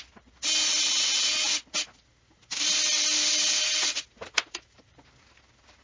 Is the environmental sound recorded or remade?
recorded